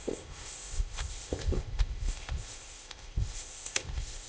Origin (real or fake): fake